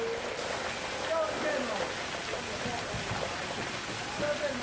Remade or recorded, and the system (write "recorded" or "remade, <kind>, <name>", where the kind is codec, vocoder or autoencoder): recorded